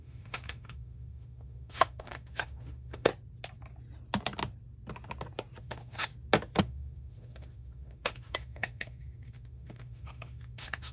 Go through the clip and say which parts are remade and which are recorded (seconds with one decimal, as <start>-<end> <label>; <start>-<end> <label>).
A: 0.0-3.1 remade; 3.1-5.6 recorded; 5.6-6.1 remade; 6.1-6.6 recorded; 6.6-10.9 remade